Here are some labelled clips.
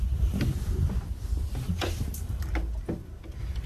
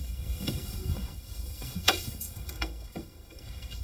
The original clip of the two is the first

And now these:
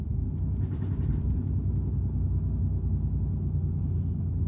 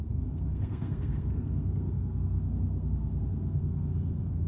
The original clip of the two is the first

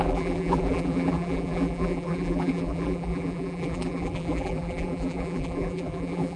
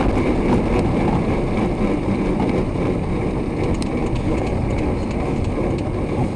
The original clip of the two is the second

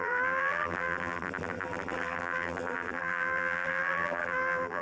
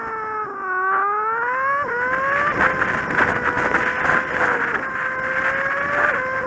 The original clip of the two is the second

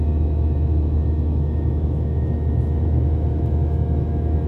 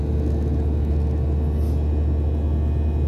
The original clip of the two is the second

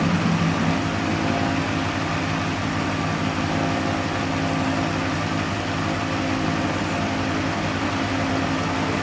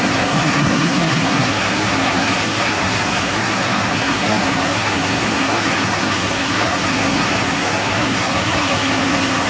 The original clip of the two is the first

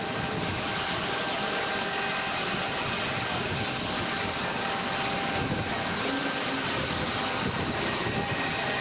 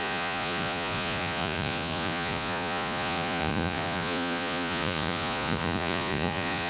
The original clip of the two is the first